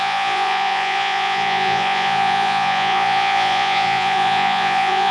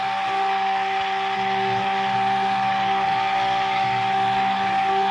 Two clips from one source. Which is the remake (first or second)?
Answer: first